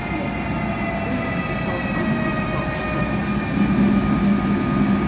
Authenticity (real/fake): real